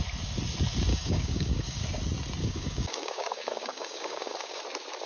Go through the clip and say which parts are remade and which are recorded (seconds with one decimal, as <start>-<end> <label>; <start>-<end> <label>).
0.0-0.9 recorded; 0.9-1.8 remade; 1.8-2.4 recorded; 2.4-4.6 remade; 4.6-5.1 recorded